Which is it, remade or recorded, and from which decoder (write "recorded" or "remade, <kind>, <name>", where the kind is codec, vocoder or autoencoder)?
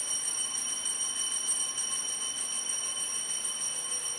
recorded